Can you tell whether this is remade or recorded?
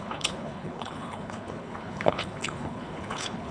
remade